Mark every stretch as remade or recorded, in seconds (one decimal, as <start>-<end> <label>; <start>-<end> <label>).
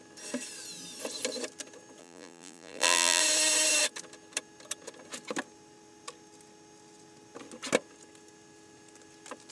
0.0-2.0 recorded; 2.0-3.2 remade; 3.2-9.5 recorded